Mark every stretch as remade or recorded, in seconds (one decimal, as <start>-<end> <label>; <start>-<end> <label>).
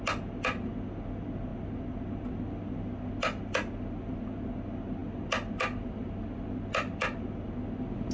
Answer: 0.0-8.1 recorded